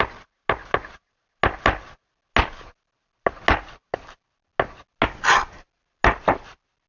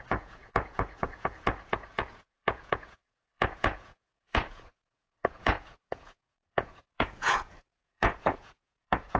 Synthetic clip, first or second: second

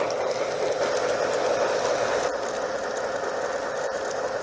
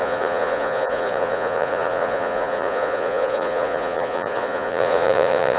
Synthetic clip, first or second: second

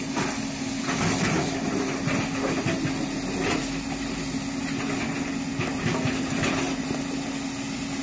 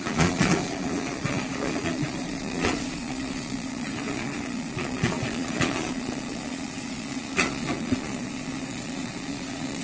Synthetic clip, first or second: second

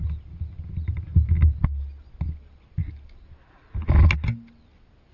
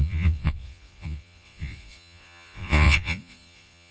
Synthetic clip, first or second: second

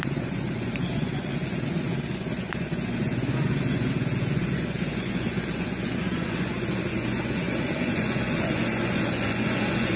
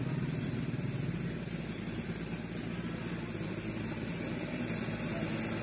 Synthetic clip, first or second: first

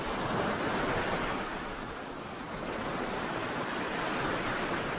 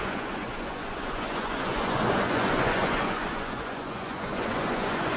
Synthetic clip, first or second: second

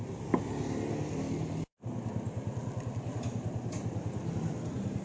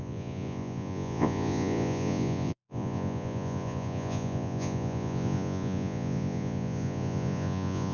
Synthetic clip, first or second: second